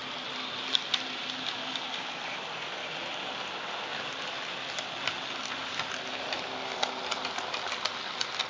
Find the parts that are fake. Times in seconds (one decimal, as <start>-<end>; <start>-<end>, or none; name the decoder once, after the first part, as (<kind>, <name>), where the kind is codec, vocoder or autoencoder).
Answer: none